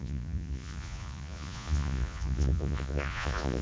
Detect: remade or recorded remade